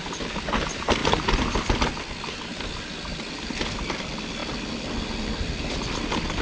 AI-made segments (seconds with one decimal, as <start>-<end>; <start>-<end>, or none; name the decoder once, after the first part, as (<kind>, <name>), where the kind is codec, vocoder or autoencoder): none

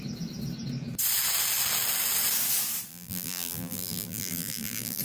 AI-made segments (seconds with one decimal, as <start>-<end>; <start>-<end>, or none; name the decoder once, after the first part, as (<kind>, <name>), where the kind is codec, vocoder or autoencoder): 2.9-5.0 (vocoder, BigVGAN v2)

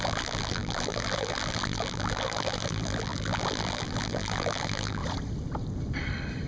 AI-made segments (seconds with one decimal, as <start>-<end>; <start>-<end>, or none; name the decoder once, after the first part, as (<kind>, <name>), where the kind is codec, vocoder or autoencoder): 0.0-5.0 (vocoder, BigVGAN v2)

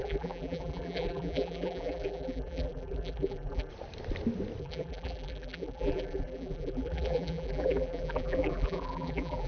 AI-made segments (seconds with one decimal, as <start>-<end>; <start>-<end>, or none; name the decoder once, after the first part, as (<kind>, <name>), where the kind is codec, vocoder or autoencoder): 0.0-3.7 (vocoder, BigVGAN v2); 4.6-9.5

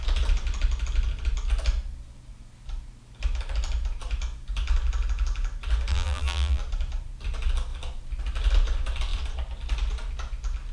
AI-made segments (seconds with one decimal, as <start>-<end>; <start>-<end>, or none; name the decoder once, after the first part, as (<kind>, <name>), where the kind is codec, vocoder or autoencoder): 5.9-6.6 (vocoder, BigVGAN v2)

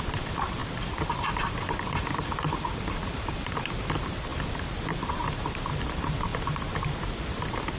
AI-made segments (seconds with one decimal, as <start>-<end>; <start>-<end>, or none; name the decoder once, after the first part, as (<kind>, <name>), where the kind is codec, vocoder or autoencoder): 0.0-7.8 (vocoder, BigVGAN v2)